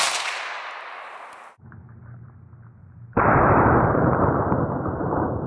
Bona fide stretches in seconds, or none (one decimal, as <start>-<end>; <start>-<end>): 0.0-2.8; 4.4-5.5